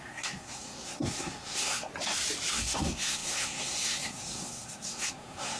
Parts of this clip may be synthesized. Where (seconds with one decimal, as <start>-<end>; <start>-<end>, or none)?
0.0-1.9; 2.5-5.6